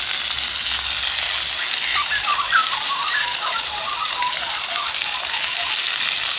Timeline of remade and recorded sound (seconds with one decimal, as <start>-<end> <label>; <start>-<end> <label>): 0.0-1.9 recorded; 1.9-5.7 remade; 5.7-6.4 recorded

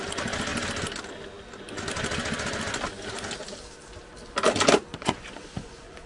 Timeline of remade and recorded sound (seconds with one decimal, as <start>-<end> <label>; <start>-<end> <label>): 0.0-4.9 recorded; 4.9-6.1 remade

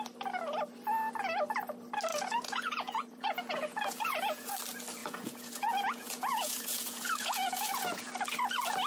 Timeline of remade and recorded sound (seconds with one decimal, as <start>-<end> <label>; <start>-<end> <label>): 0.0-2.1 recorded; 2.1-4.5 remade; 4.5-5.0 recorded; 5.0-8.1 remade; 8.1-8.9 recorded

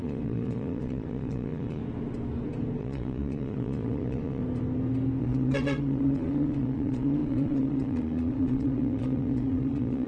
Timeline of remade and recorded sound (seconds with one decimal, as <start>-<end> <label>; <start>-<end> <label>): 0.0-1.8 remade; 1.8-2.8 recorded; 2.8-4.4 remade; 4.4-5.2 recorded; 5.2-10.1 remade

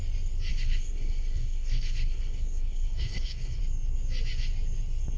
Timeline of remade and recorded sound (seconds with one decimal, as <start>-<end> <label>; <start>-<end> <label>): 0.0-0.5 recorded; 0.5-3.6 remade; 3.6-5.2 recorded

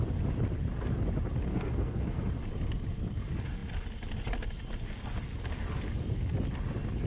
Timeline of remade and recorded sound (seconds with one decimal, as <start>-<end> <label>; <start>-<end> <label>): 0.0-1.5 recorded; 1.5-2.3 remade; 2.3-7.1 recorded

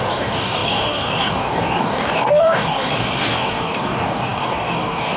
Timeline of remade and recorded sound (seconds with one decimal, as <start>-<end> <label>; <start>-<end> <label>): 0.0-5.2 remade

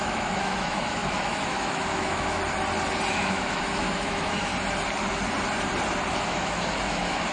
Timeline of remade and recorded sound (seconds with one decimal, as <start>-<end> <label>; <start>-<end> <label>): 0.0-2.4 remade; 2.4-3.1 recorded; 3.1-4.5 remade; 4.5-6.1 recorded; 6.1-7.3 remade